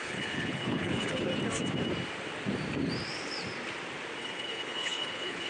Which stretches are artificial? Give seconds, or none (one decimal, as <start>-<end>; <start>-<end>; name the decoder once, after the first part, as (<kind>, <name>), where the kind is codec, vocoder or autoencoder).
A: 0.0-1.3 (codec, HILCodec); 4.2-5.5